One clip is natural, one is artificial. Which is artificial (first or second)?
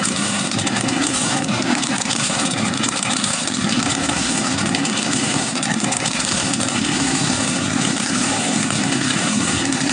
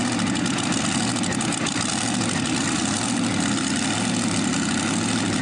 first